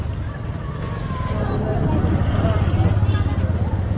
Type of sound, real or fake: real